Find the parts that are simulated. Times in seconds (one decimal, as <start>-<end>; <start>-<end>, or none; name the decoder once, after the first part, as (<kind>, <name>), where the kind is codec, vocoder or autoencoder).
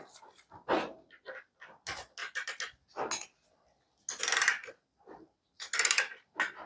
none